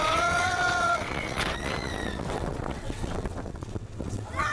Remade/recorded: remade